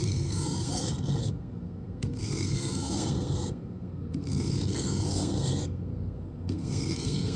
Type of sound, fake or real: fake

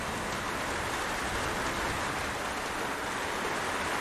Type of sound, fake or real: real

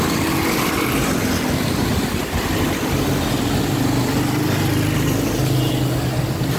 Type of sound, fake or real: real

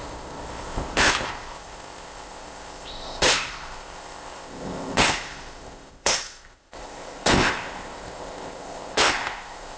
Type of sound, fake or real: fake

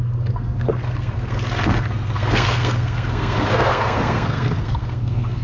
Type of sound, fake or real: fake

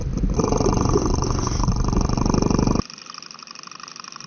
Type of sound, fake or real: real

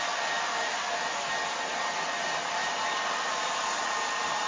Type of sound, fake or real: real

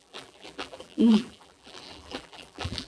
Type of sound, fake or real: fake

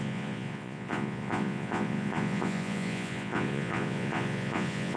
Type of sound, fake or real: fake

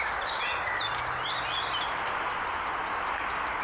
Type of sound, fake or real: real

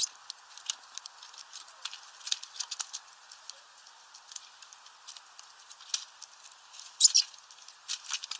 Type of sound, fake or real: real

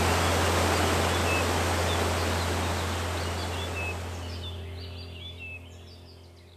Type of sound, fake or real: real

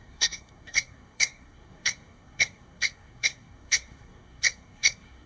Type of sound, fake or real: fake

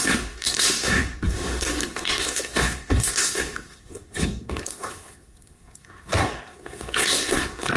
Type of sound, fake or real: fake